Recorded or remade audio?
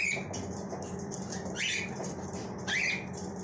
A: recorded